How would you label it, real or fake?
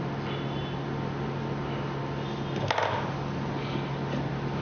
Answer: real